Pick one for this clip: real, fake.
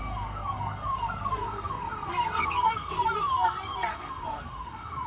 fake